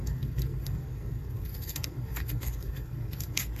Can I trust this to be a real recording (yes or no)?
no